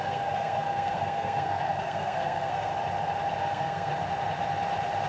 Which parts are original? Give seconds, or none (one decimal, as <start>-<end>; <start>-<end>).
2.7-3.4; 3.9-5.1